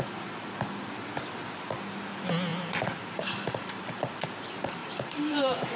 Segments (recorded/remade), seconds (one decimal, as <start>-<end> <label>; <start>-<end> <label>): 0.0-2.5 recorded; 2.5-4.1 remade; 4.1-4.8 recorded; 4.8-5.8 remade